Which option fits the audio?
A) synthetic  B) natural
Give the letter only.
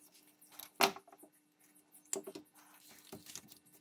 B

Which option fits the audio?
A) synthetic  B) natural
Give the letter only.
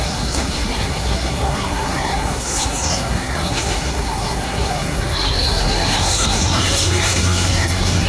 A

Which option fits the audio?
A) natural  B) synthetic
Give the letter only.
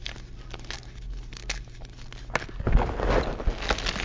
A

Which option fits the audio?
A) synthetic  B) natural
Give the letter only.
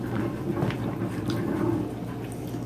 B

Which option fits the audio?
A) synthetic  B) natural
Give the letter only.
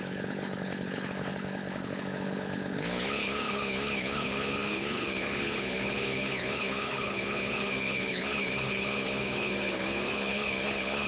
A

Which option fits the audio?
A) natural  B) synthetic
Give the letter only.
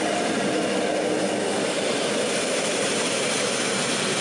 A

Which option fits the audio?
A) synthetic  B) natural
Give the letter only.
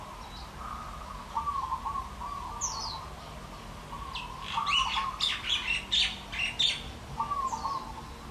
B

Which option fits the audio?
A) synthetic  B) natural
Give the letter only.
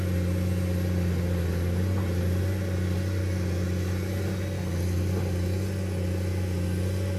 B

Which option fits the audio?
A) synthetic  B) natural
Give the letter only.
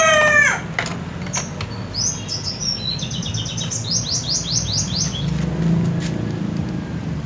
B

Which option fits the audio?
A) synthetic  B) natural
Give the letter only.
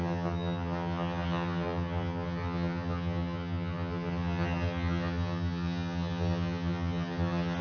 A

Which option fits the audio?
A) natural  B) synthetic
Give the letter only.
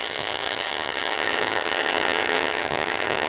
B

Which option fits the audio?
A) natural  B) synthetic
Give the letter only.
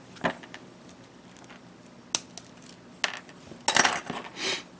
A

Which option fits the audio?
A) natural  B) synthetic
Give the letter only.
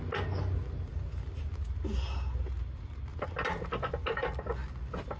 A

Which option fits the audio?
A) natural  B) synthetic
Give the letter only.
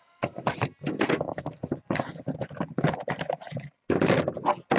A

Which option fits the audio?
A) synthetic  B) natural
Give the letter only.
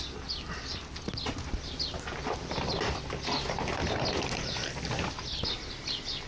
B